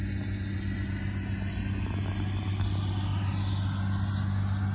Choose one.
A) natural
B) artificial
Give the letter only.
A